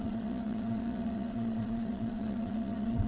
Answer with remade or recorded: remade